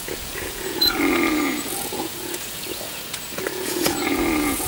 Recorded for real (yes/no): no